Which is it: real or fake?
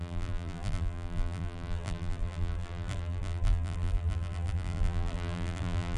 fake